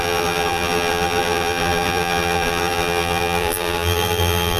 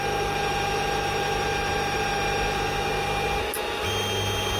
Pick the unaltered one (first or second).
second